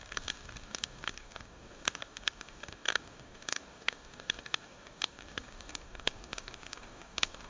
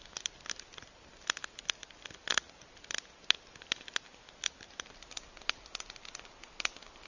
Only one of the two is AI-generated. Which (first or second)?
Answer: first